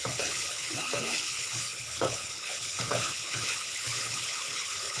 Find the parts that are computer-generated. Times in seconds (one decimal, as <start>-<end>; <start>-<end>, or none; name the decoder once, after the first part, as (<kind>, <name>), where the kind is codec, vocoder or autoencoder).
0.0-5.0 (codec, HILCodec)